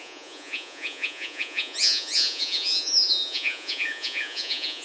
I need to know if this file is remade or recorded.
remade